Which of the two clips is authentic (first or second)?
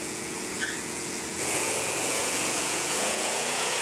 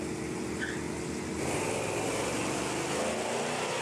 second